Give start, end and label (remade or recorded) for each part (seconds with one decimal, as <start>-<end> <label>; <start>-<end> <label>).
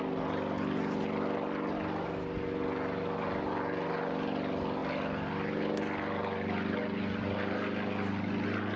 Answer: 0.0-8.8 recorded